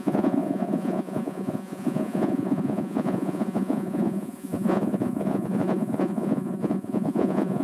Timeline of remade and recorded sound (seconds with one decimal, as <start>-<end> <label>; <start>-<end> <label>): 0.0-7.6 remade